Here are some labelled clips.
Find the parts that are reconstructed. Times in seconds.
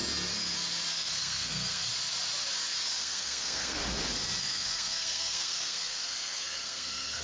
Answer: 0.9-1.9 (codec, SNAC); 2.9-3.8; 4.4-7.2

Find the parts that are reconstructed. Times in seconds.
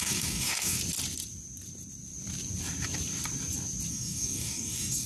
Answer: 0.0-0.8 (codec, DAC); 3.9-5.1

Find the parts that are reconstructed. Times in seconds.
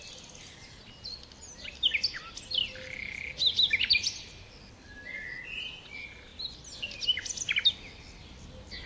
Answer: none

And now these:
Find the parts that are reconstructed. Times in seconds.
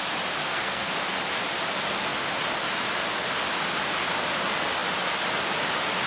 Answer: 0.4-0.9 (codec, SNAC)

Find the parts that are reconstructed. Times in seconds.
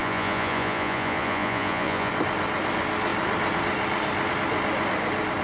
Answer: 0.0-2.1 (vocoder, Vocos)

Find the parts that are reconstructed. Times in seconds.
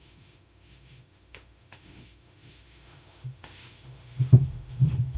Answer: 0.0-5.2 (autoencoder, DAC-VAE)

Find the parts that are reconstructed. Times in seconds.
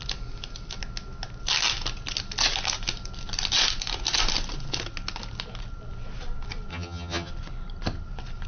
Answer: 6.7-7.3 (vocoder, HiFi-GAN)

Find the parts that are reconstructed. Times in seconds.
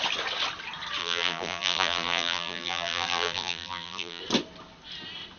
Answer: 1.0-4.2 (vocoder, BigVGAN v2)